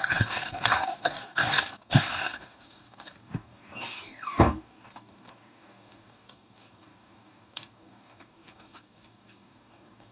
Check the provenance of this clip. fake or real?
fake